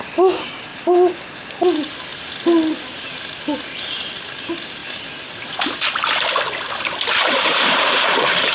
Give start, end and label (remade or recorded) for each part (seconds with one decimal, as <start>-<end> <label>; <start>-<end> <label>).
0.0-0.7 recorded; 0.7-1.2 remade; 1.2-7.2 recorded; 7.2-8.5 remade